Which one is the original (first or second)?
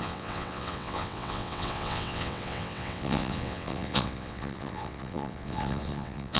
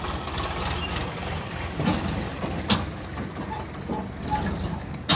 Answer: second